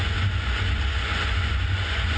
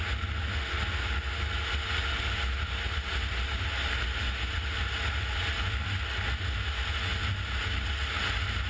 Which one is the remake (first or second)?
first